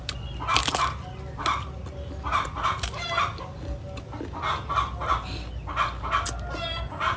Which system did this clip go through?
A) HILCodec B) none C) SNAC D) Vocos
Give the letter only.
B